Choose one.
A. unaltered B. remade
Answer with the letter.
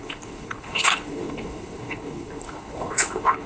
B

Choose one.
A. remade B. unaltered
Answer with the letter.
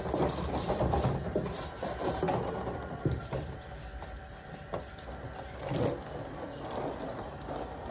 A